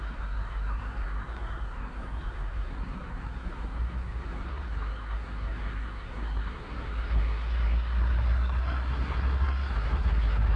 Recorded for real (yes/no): no